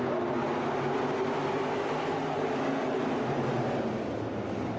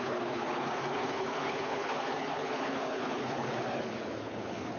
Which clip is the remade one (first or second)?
second